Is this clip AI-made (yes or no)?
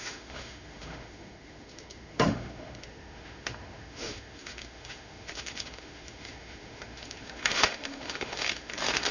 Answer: yes